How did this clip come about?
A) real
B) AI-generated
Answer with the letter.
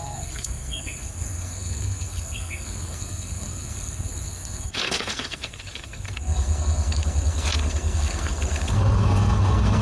B